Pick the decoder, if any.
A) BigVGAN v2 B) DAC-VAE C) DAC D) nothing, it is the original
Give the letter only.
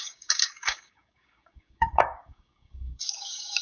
C